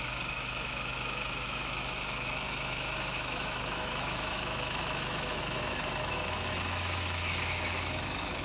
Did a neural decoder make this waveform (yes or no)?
yes